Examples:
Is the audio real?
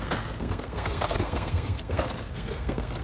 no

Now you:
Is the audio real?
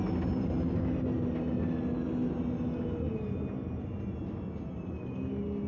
yes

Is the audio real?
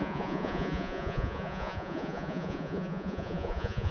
no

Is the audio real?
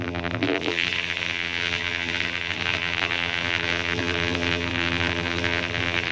no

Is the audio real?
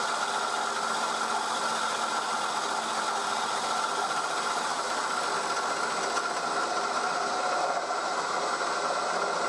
yes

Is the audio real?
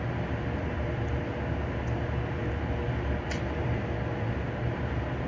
yes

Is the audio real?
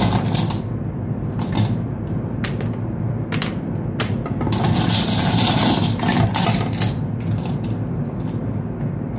yes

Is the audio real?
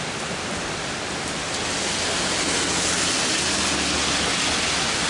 yes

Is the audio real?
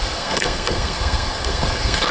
no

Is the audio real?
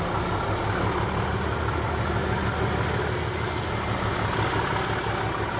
yes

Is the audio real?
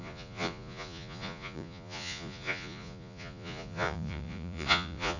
no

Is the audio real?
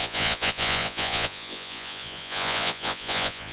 no